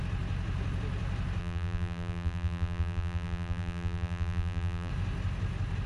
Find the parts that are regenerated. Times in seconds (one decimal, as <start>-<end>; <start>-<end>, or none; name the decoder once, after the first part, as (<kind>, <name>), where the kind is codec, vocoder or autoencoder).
1.4-4.9 (vocoder, BigVGAN v2)